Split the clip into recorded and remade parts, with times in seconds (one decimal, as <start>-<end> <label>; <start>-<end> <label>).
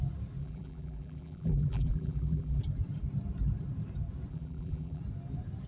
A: 0.0-0.4 recorded; 0.4-2.6 remade; 2.6-4.3 recorded; 4.3-5.0 remade; 5.0-5.7 recorded